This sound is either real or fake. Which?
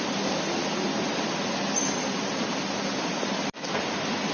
real